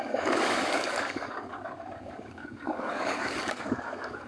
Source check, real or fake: fake